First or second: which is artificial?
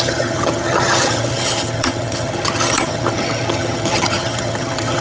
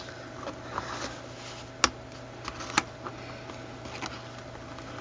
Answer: first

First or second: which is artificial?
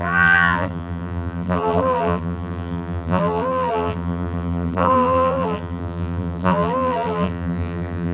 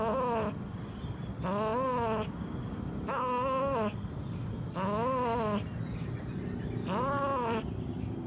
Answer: first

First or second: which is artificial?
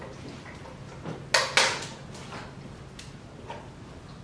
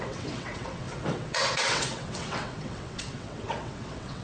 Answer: second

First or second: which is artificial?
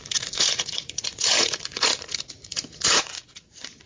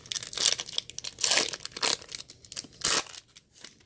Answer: first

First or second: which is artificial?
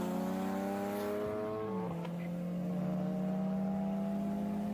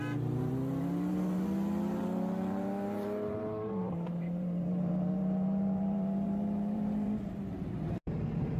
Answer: second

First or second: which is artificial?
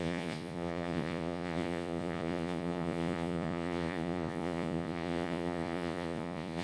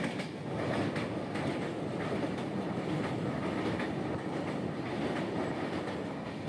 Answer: first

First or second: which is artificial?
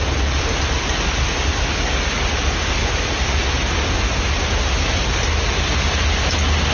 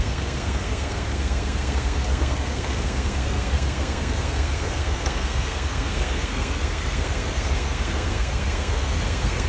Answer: second